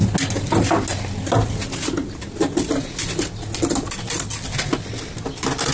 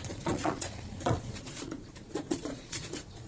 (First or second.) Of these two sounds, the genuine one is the first